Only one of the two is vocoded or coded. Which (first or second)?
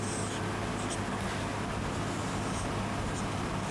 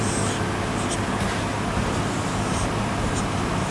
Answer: second